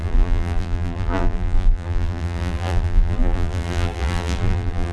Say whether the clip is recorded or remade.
remade